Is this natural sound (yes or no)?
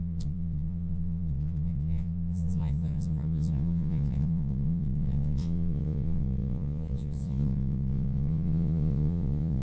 no